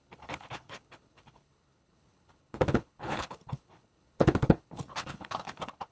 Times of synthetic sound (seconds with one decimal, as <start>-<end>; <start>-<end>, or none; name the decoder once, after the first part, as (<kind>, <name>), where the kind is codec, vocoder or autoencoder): 0.0-5.9 (codec, HILCodec)